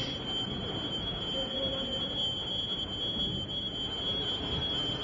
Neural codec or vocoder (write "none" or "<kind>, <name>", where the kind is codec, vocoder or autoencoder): none